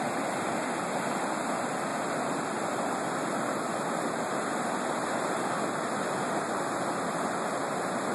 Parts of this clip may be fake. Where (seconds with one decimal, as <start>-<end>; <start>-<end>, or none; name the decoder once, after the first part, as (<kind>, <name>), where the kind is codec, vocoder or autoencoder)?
none